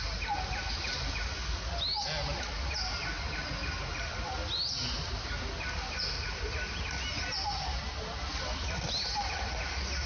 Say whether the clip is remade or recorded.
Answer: recorded